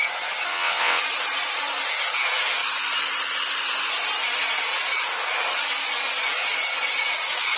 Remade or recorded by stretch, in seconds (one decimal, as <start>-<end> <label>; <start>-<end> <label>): 0.0-0.5 recorded; 0.5-1.0 remade; 1.0-7.6 recorded